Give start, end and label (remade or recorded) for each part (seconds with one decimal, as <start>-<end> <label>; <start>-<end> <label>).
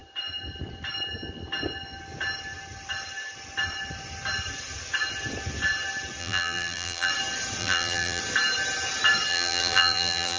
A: 0.0-6.2 recorded; 6.2-7.1 remade; 7.1-7.6 recorded; 7.6-8.2 remade; 8.2-9.3 recorded; 9.3-10.4 remade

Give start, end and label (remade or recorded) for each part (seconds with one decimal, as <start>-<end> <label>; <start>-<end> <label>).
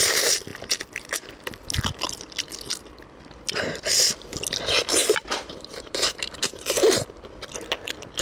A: 0.0-5.0 recorded; 5.0-6.5 remade; 6.5-8.2 recorded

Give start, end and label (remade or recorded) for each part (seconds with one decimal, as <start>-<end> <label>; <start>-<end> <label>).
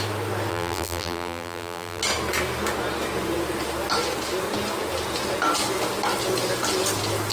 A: 0.0-0.5 recorded; 0.5-2.0 remade; 2.0-7.3 recorded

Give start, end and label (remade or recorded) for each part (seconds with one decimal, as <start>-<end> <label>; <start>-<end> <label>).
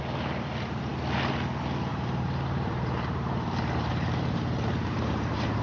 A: 0.0-1.9 recorded; 1.9-5.6 remade